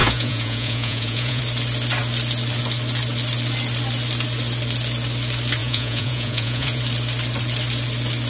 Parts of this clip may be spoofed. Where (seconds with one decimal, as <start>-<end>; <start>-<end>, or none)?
0.0-1.4; 5.6-6.8